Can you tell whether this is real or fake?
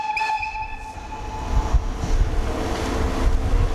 real